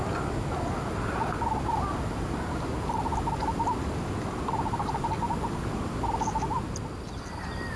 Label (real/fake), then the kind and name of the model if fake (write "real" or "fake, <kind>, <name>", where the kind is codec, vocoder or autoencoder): real